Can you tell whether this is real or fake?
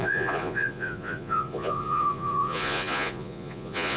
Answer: fake